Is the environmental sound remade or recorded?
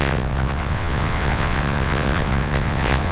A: remade